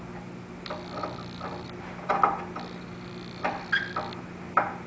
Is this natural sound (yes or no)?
yes